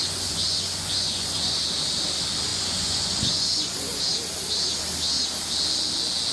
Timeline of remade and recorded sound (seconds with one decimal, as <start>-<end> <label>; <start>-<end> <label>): 0.0-1.6 remade; 1.6-2.5 recorded; 2.5-4.0 remade; 4.0-6.3 recorded